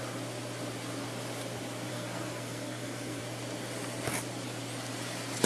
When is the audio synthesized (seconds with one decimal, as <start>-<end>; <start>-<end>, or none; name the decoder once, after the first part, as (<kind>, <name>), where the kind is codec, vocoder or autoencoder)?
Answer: 1.9-3.2 (codec, SNAC)